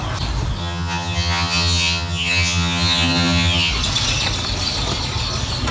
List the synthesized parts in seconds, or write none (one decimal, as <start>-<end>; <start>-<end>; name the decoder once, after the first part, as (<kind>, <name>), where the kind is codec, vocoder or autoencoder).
0.6-3.7 (vocoder, HiFi-GAN)